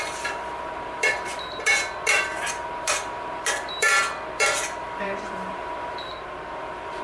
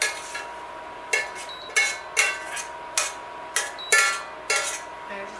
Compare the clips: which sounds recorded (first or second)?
second